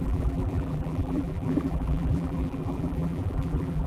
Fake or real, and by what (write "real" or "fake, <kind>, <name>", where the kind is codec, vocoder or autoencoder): fake, vocoder, BigVGAN v2